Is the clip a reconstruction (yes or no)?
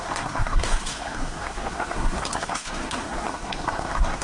yes